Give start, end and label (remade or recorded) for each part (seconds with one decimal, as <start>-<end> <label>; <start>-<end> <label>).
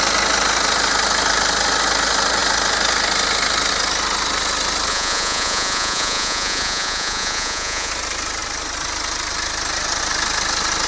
0.0-4.9 recorded; 4.9-7.9 remade; 7.9-10.9 recorded